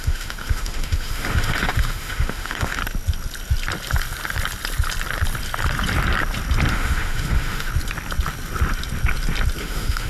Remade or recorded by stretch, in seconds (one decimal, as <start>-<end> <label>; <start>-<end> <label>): 0.0-2.8 remade; 2.8-6.7 recorded; 6.7-7.7 remade; 7.7-9.6 recorded; 9.6-10.1 remade